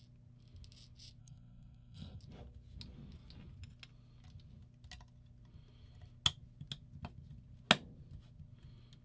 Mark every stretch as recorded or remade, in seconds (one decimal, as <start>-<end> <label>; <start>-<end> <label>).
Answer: 0.0-1.2 recorded; 1.2-2.2 remade; 2.2-9.0 recorded